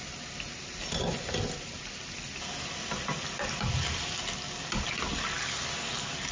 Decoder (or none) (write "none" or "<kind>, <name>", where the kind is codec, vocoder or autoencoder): none